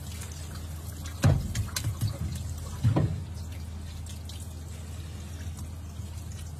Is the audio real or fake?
real